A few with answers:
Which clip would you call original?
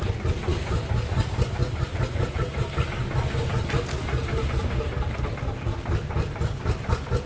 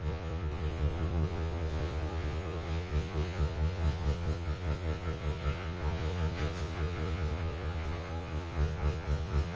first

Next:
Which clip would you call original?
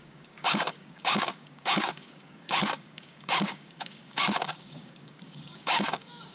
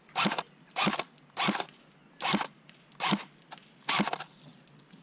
second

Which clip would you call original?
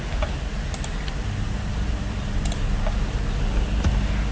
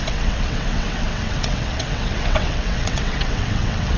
first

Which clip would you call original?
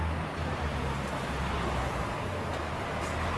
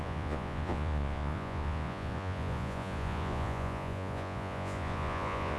first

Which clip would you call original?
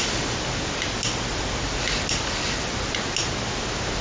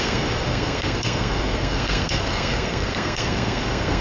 first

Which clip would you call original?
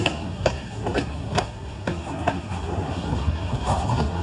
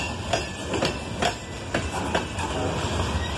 second